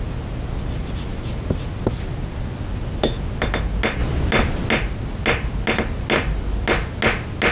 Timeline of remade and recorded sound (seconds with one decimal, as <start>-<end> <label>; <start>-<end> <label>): 0.0-7.5 recorded